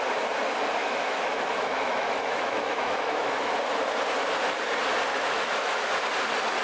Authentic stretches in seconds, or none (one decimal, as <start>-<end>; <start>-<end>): 0.0-0.8; 3.5-5.1; 5.8-6.6